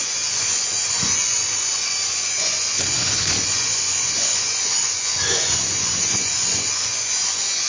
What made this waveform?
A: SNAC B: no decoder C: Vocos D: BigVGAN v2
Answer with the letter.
C